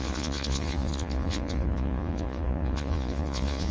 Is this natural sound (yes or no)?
no